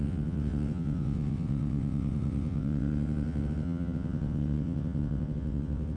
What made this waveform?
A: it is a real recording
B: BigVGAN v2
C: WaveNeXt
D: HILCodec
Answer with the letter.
C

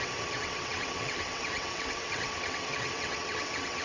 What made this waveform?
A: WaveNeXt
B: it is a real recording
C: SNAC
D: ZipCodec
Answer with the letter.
A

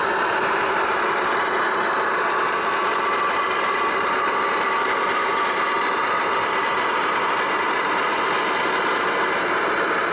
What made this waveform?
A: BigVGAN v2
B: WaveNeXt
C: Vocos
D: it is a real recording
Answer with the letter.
D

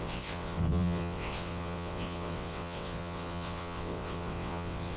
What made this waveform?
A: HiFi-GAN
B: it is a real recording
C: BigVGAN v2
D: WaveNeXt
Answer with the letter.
D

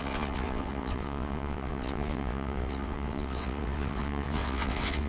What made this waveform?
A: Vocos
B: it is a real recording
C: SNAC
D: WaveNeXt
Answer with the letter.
D